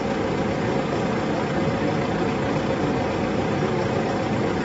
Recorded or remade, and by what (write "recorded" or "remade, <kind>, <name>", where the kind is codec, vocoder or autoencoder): recorded